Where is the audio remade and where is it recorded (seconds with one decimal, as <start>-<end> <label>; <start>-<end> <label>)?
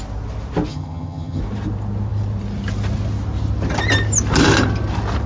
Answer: 0.0-0.7 recorded; 0.7-1.4 remade; 1.4-5.3 recorded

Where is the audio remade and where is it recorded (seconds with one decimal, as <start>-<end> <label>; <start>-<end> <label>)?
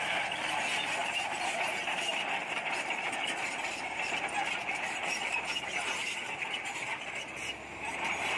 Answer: 0.0-1.0 recorded; 1.0-1.6 remade; 1.6-8.4 recorded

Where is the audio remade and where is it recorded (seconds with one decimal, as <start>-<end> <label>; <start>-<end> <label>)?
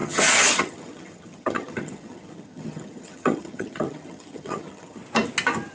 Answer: 0.0-5.0 remade; 5.0-5.7 recorded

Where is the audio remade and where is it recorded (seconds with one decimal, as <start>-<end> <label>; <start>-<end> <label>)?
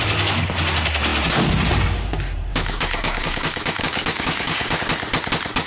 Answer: 0.0-2.5 recorded; 2.5-4.8 remade; 4.8-5.7 recorded